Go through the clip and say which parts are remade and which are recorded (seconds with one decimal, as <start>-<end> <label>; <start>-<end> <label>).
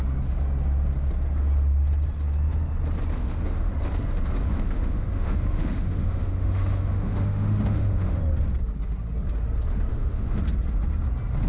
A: 0.0-3.1 recorded; 3.1-3.7 remade; 3.7-4.5 recorded; 4.5-8.2 remade; 8.2-9.9 recorded; 9.9-10.4 remade; 10.4-11.5 recorded